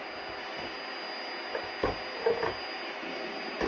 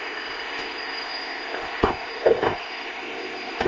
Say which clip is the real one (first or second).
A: first